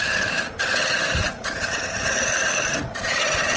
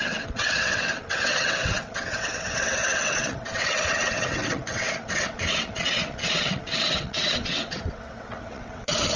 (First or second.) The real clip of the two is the first